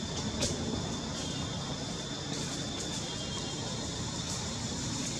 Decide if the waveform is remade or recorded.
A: remade